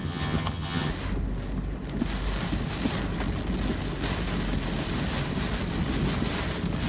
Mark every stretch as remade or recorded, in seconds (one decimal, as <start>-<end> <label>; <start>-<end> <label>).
0.0-0.9 remade; 0.9-6.9 recorded